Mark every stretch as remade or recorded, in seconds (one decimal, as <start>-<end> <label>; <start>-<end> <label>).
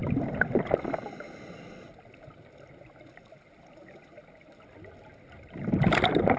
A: 0.0-6.4 recorded